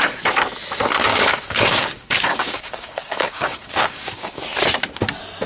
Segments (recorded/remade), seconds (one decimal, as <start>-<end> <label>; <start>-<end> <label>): 0.0-1.1 recorded; 1.1-4.4 remade; 4.4-5.5 recorded